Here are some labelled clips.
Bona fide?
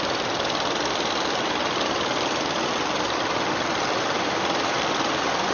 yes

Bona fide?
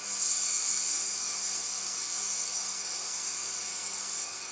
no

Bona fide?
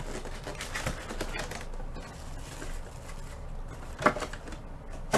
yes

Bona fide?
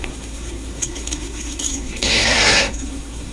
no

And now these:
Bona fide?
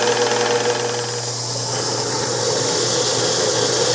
yes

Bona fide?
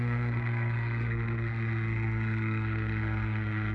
no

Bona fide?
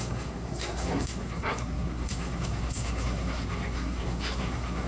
no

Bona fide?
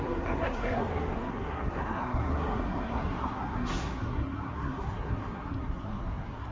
no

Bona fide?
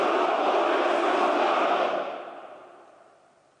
yes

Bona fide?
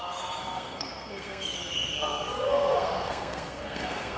no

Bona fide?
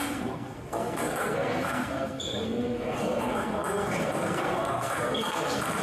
no